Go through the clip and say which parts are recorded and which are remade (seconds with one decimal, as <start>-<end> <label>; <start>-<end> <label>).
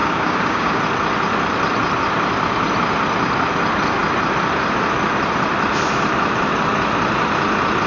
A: 0.0-0.8 remade; 0.8-7.9 recorded